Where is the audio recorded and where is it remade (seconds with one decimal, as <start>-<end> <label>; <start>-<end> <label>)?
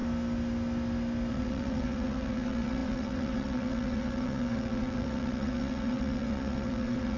0.0-1.3 recorded; 1.3-7.2 remade